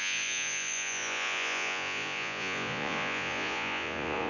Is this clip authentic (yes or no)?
no